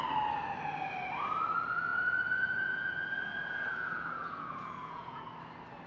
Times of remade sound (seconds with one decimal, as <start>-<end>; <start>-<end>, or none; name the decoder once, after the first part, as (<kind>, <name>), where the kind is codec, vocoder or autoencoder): 1.9-5.2 (vocoder, Vocos)

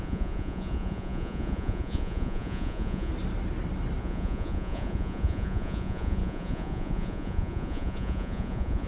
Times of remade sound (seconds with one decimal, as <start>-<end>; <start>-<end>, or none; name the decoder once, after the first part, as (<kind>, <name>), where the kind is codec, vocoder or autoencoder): 0.0-3.1 (vocoder, Vocos); 4.0-8.9

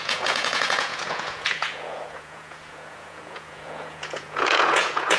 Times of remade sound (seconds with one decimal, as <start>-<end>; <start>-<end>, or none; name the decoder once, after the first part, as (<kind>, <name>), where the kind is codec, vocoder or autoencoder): 0.0-5.2 (vocoder, Vocos)

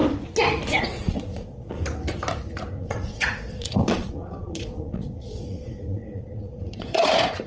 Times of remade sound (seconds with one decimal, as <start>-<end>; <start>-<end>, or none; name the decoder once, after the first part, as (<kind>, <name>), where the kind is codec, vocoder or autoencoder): 0.8-1.8 (vocoder, Vocos); 2.8-7.5

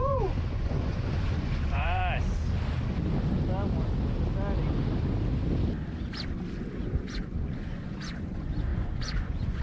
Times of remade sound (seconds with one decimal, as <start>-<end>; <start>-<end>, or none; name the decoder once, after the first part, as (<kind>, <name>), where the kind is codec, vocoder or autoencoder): 0.0-2.0 (vocoder, Vocos); 6.8-9.6

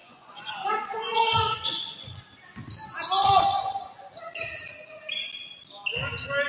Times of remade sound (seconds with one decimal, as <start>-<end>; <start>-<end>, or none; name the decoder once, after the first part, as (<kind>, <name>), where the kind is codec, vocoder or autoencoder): 0.0-2.2 (vocoder, Vocos); 3.2-3.8

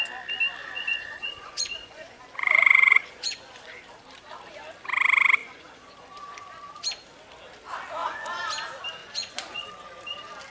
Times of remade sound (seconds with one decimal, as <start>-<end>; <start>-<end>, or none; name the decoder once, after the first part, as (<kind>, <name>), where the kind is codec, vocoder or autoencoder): 0.6-3.8 (vocoder, Vocos); 5.4-6.8; 8.0-8.5; 9.0-9.7

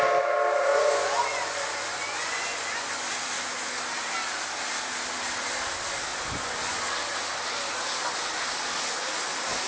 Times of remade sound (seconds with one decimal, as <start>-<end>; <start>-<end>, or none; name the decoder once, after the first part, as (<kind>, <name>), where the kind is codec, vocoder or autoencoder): 0.7-3.2 (vocoder, Vocos); 6.1-6.9